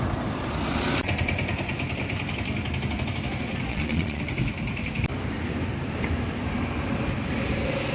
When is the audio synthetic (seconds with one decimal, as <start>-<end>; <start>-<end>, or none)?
3.7-4.2